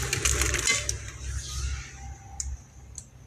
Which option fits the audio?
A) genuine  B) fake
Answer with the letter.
A